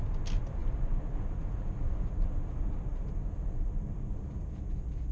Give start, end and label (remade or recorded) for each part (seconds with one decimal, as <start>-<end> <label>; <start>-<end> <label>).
0.0-5.1 recorded